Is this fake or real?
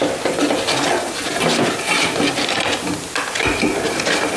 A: real